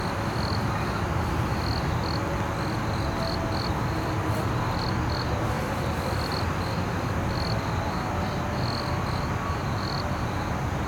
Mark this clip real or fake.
real